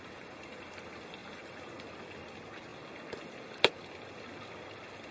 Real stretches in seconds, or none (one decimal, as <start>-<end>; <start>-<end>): 2.7-3.7